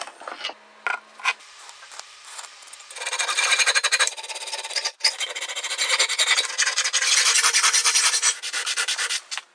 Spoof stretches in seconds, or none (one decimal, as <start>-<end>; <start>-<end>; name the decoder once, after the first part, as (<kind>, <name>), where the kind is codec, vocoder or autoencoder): 1.4-5.4 (vocoder, BigVGAN v2); 7.8-9.5

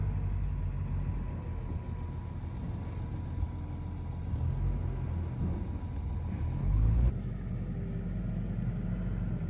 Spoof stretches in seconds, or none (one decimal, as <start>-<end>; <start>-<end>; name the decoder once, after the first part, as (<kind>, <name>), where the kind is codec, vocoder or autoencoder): 6.6-7.1 (codec, HILCodec)